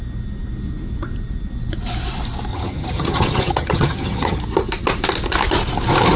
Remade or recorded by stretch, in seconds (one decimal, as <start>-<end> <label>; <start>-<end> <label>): 0.0-2.5 recorded; 2.5-4.4 remade; 4.4-6.2 recorded